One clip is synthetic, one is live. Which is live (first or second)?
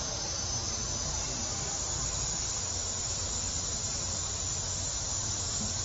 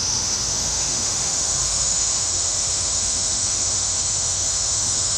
first